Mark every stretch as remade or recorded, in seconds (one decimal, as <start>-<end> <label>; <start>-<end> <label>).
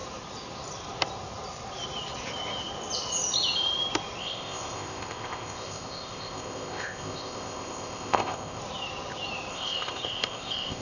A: 0.0-4.2 recorded; 4.2-8.6 remade; 8.6-9.5 recorded; 9.5-10.8 remade